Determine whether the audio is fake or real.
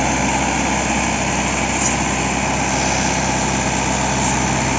real